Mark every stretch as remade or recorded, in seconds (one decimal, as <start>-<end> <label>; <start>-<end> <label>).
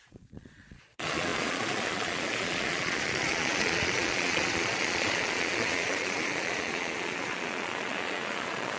0.0-8.8 remade